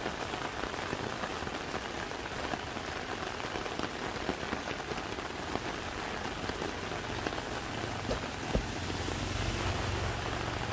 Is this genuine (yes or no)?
yes